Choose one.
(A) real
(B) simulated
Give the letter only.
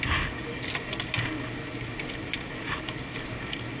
A